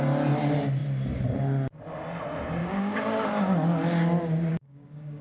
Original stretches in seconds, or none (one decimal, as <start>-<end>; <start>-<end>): 0.0-2.6; 3.3-4.5